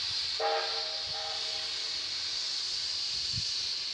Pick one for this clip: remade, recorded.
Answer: recorded